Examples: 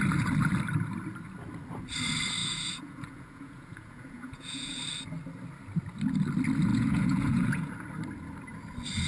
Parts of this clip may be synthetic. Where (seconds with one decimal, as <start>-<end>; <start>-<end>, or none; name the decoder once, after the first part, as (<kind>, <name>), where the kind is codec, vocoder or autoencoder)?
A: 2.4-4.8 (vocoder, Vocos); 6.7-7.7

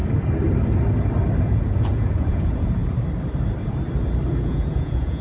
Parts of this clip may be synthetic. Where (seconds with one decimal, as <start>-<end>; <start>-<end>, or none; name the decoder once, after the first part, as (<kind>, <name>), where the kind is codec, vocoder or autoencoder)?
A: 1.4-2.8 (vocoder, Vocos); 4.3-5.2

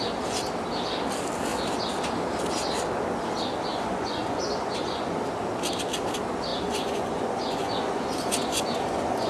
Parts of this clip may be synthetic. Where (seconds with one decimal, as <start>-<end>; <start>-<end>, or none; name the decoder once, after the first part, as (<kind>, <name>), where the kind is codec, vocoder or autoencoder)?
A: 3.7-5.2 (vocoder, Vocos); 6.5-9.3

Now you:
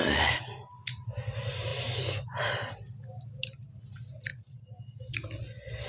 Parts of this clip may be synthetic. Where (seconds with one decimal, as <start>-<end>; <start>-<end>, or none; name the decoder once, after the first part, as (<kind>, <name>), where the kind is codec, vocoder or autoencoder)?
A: 4.3-5.0 (vocoder, Vocos)